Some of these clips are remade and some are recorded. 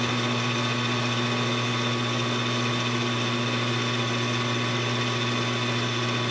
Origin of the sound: recorded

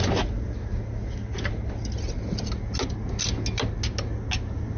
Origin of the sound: recorded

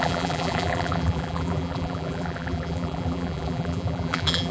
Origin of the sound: remade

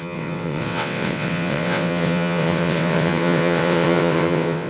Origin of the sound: remade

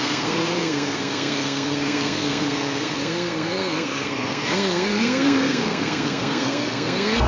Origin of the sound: remade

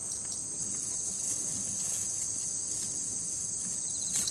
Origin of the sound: recorded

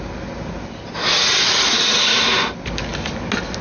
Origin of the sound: recorded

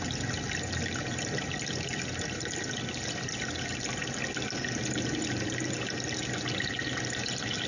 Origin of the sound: recorded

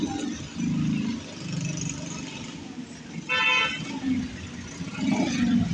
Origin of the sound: recorded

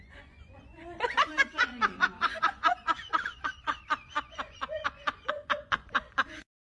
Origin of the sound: remade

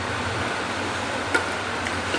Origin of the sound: recorded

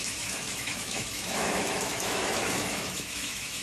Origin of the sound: remade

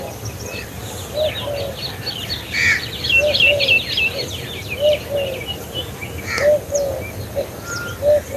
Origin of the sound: recorded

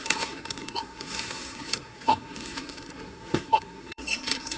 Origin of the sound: remade